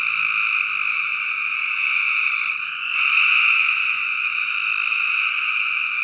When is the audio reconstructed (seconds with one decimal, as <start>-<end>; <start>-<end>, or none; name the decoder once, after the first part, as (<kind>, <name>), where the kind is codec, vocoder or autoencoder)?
0.9-4.5 (vocoder, Vocos); 4.9-6.0